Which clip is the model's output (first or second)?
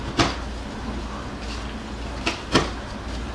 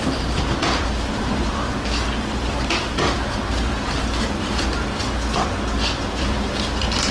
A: second